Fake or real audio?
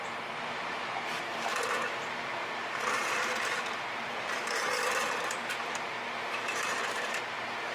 fake